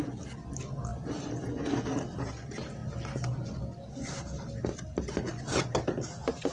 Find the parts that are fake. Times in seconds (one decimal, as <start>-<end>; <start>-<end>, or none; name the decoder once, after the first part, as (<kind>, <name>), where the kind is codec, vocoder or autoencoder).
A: 0.9-1.5 (vocoder, BigVGAN v2)

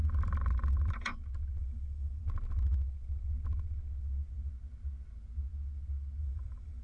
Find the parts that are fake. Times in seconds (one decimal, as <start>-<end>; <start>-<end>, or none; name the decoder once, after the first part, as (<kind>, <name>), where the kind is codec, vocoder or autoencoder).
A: 0.0-1.1 (vocoder, BigVGAN v2); 1.6-2.2; 6.2-6.8

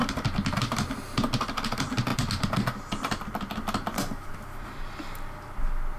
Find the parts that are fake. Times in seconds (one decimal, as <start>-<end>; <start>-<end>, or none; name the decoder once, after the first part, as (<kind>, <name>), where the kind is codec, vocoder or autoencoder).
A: none

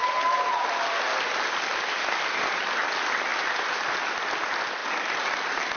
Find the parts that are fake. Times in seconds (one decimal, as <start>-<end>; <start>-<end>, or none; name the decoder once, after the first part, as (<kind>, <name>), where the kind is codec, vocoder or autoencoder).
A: 3.3-4.1 (vocoder, BigVGAN v2)

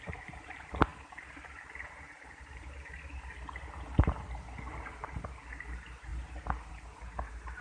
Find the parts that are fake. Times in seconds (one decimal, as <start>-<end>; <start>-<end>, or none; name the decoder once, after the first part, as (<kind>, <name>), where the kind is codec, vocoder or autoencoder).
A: 0.0-6.1 (vocoder, BigVGAN v2); 6.7-7.6

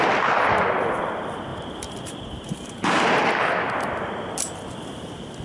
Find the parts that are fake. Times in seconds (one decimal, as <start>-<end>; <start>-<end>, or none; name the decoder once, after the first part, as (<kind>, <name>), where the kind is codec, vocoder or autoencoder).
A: 1.5-3.3 (vocoder, BigVGAN v2)